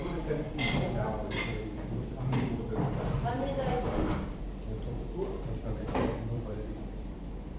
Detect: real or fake fake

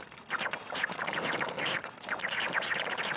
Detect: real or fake real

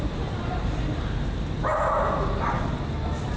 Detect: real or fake real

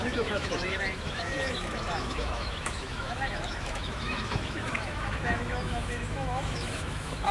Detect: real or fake fake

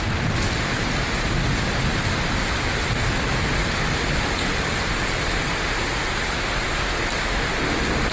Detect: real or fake real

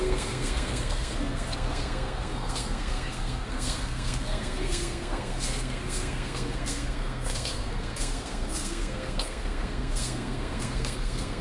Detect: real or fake fake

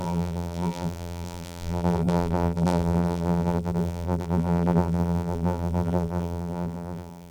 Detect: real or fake fake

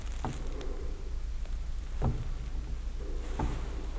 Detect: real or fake real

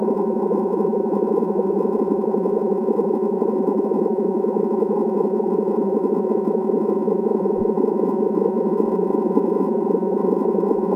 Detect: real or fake fake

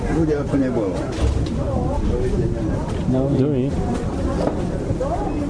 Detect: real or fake real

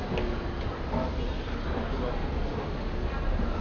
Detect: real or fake real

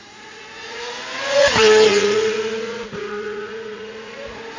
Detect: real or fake fake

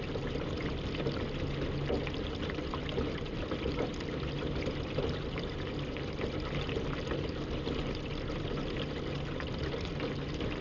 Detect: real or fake real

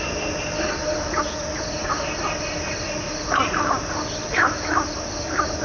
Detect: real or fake real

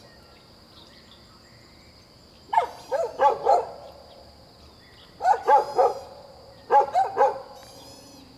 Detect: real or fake real